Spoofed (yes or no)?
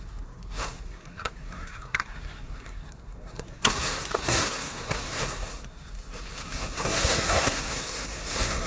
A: yes